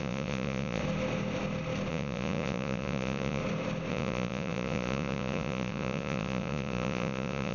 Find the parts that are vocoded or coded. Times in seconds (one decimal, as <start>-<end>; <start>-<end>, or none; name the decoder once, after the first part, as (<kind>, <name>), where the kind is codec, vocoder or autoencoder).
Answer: 0.0-0.8 (vocoder, Vocos); 1.9-3.4; 3.9-7.5